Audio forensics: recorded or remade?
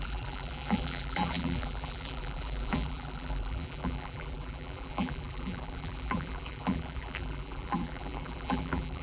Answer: remade